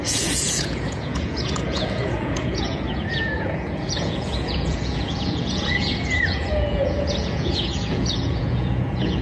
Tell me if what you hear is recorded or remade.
remade